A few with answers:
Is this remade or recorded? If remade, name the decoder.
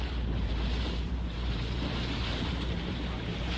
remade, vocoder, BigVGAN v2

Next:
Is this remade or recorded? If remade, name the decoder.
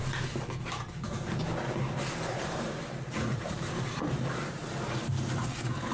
recorded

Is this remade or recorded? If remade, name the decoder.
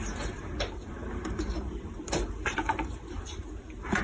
remade, vocoder, BigVGAN v2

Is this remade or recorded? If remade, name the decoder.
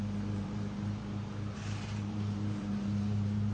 remade, vocoder, BigVGAN v2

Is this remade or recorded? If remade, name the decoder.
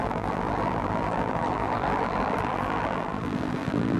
remade, vocoder, BigVGAN v2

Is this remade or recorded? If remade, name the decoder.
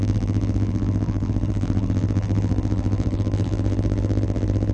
remade, vocoder, BigVGAN v2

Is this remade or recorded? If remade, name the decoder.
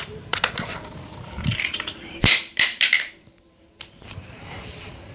remade, vocoder, BigVGAN v2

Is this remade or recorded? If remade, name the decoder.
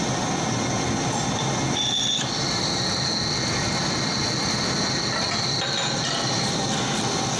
recorded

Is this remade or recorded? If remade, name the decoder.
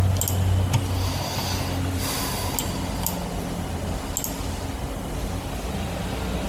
recorded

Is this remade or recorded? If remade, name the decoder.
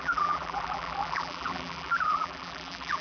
remade, vocoder, BigVGAN v2